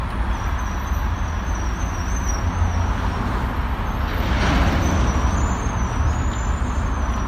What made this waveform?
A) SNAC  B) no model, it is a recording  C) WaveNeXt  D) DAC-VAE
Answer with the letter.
B